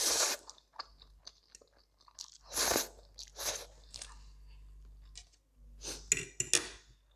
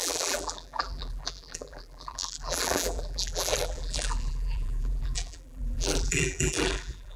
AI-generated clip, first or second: second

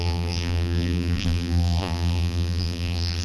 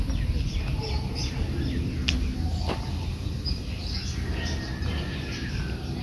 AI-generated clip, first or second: first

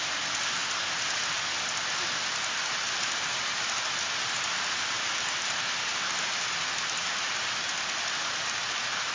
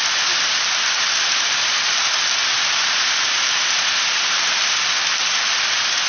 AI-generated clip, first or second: second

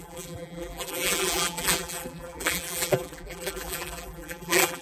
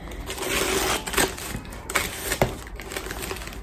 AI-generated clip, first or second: first